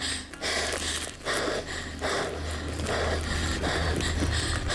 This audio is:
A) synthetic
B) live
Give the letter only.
B